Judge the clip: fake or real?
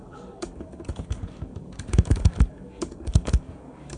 fake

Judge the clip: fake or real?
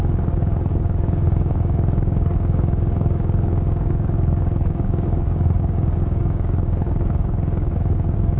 fake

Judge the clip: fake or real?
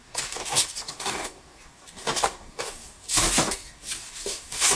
fake